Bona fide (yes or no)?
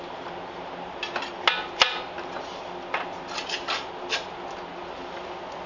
yes